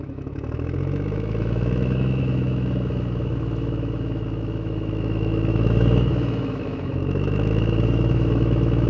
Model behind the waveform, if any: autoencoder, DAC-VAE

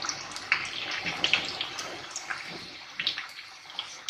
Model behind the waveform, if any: none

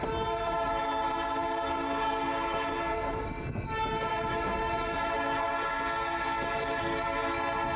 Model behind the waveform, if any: none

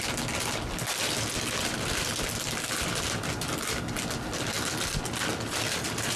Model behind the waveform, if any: none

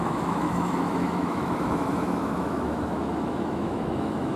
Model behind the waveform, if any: autoencoder, DAC-VAE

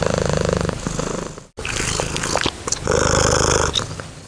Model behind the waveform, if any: none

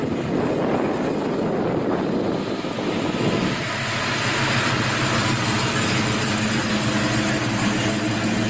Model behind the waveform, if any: none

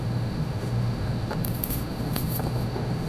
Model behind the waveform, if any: autoencoder, DAC-VAE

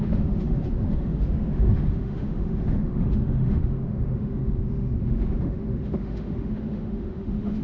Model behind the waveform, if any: autoencoder, DAC-VAE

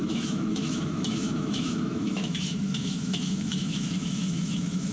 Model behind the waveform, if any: autoencoder, DAC-VAE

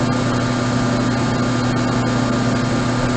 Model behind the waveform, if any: none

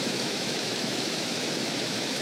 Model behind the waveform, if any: autoencoder, DAC-VAE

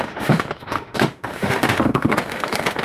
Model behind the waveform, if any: autoencoder, DAC-VAE